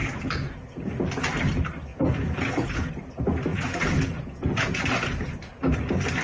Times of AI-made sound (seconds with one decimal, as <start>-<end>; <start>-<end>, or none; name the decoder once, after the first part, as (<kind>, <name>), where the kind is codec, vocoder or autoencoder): 0.0-0.9 (vocoder, Vocos); 1.9-2.9; 3.5-4.8